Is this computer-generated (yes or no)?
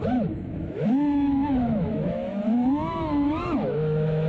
yes